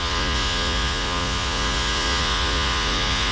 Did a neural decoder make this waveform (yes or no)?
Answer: yes